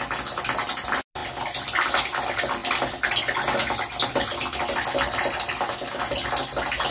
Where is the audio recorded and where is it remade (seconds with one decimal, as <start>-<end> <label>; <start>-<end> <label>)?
0.0-6.9 recorded